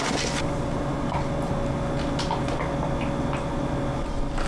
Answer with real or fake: real